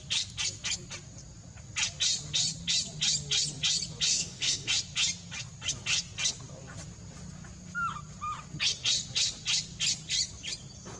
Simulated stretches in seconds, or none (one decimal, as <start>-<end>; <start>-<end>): 4.1-4.7

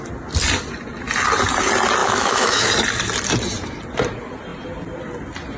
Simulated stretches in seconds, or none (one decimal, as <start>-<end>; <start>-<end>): 2.0-2.7